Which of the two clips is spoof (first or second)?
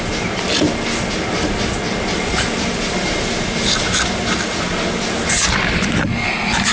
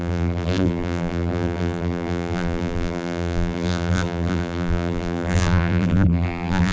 second